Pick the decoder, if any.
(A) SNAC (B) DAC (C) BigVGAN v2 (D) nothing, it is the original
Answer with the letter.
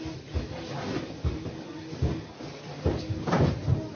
D